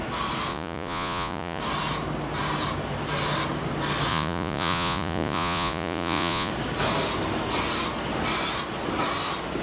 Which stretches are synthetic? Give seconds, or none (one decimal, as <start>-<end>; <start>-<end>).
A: 0.5-1.6; 4.1-6.5